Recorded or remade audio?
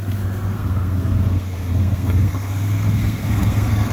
remade